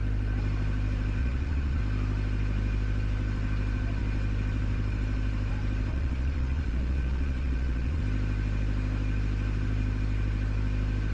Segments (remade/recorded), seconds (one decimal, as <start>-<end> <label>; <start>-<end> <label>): 0.0-1.2 recorded; 1.2-1.8 remade; 1.8-5.9 recorded; 5.9-8.0 remade; 8.0-11.1 recorded